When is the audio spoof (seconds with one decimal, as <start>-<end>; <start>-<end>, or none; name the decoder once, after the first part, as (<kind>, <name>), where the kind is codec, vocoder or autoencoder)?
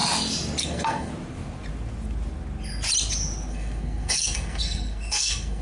0.6-1.1 (codec, SNAC); 3.5-5.6